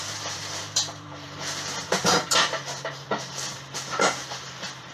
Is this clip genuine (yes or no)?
no